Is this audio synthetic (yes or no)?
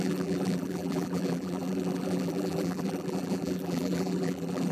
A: yes